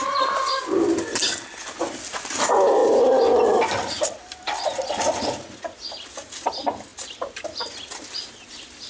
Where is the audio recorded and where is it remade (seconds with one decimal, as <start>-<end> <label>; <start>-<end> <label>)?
0.0-8.9 recorded